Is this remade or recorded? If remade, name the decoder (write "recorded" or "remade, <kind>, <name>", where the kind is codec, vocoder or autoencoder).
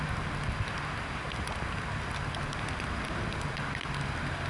recorded